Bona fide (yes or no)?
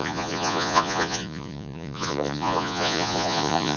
no